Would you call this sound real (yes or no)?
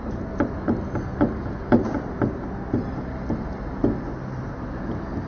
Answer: yes